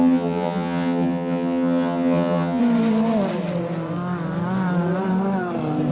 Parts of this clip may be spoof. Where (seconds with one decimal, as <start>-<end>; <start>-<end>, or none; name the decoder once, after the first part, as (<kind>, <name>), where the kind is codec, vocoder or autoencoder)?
0.0-2.6 (vocoder, HiFi-GAN)

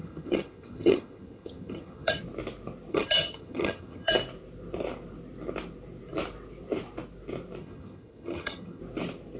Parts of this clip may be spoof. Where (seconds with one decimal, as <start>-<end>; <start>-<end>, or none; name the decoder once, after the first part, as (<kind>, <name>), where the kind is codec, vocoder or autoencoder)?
0.0-2.2 (vocoder, HiFi-GAN); 2.9-4.1; 7.6-8.8